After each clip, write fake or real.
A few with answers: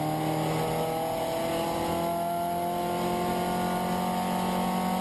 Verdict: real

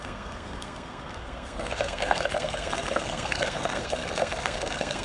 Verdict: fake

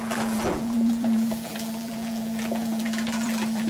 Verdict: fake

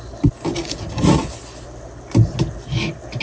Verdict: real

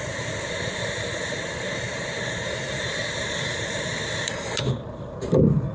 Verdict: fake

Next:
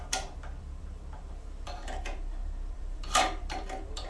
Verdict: fake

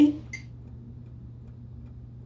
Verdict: real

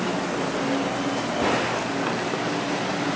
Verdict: real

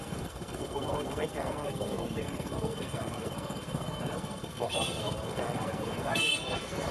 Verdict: fake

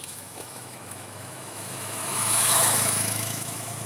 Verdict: fake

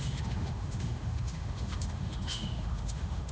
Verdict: fake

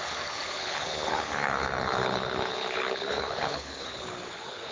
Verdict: fake